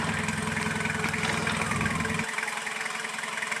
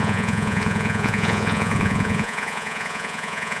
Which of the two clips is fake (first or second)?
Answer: second